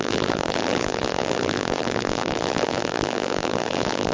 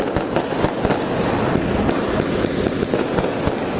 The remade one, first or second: first